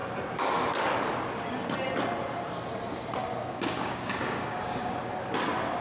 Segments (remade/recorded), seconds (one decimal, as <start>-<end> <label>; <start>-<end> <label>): 0.0-3.5 recorded; 3.5-5.0 remade; 5.0-5.8 recorded